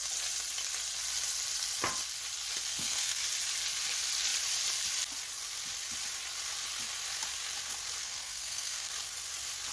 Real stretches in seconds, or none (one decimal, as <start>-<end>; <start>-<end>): 0.0-2.7; 3.2-8.0; 8.9-9.7